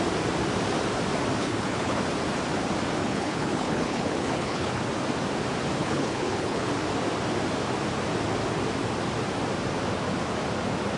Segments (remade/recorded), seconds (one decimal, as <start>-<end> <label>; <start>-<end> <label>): 0.0-1.4 recorded; 1.4-2.0 remade; 2.0-3.0 recorded; 3.0-4.8 remade; 4.8-5.8 recorded; 5.8-6.7 remade; 6.7-11.0 recorded